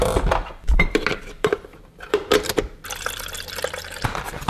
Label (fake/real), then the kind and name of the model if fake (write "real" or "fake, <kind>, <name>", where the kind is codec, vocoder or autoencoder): fake, vocoder, BigVGAN v2